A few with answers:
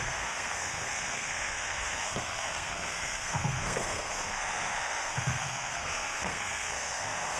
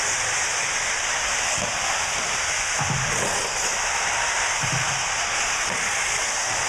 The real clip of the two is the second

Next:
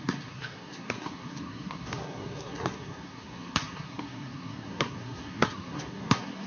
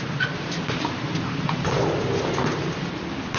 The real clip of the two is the second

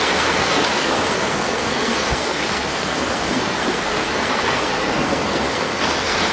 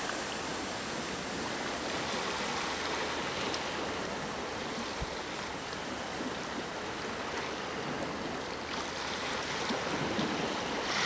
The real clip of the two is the second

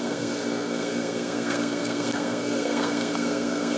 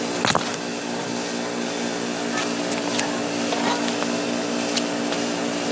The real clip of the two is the second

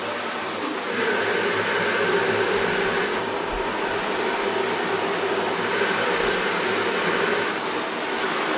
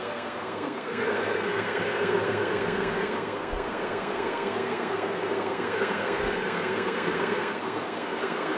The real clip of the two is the first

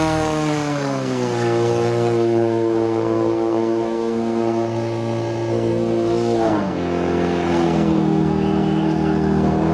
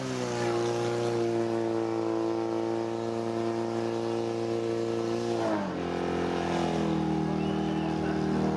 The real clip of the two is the second